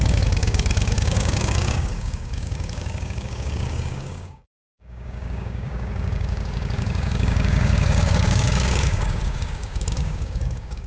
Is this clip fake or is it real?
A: fake